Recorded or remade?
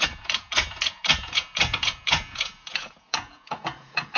remade